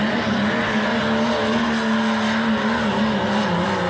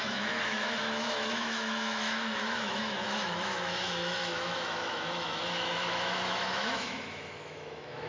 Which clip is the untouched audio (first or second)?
first